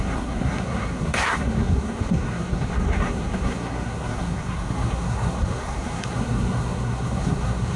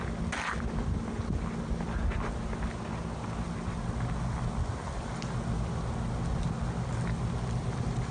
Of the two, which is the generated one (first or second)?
first